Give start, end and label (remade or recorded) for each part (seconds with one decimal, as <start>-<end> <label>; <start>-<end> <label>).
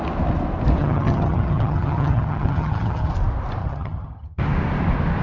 0.0-0.8 recorded; 0.8-3.1 remade; 3.1-3.6 recorded; 3.6-4.4 remade; 4.4-5.2 recorded